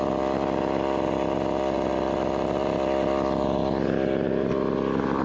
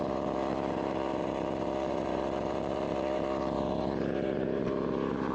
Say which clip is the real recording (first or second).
first